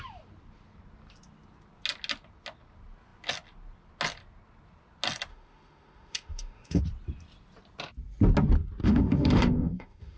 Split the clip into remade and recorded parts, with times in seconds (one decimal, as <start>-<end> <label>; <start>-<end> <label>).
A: 0.0-5.3 recorded; 5.3-6.8 remade; 6.8-8.8 recorded; 8.8-10.2 remade